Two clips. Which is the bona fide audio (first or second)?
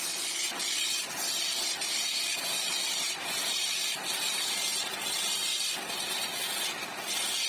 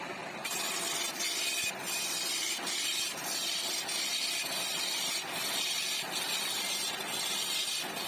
first